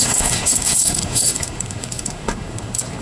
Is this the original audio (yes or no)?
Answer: no